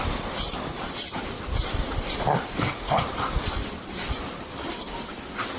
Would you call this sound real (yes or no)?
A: no